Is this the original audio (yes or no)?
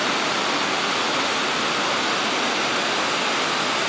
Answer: yes